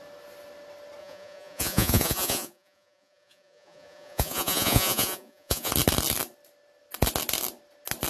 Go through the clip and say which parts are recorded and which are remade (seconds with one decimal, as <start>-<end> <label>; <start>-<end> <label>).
0.0-1.0 recorded; 1.0-5.7 remade; 5.7-8.1 recorded